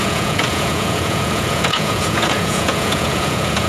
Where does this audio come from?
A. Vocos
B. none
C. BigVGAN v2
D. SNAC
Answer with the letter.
A